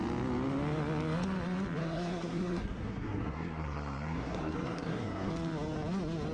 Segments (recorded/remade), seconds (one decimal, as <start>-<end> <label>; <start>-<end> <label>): 0.0-1.8 recorded; 1.8-5.3 remade; 5.3-6.3 recorded